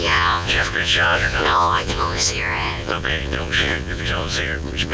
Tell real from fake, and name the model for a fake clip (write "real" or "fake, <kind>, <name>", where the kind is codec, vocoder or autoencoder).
fake, vocoder, Vocos